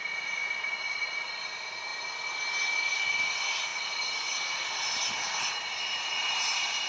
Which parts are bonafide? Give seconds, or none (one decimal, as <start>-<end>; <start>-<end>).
0.0-6.9